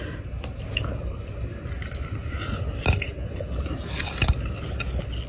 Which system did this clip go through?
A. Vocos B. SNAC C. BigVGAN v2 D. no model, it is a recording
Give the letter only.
D